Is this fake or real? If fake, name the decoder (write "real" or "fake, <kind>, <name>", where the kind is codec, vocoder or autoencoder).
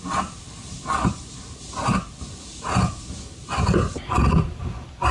real